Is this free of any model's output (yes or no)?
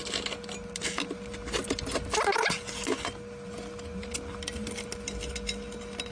yes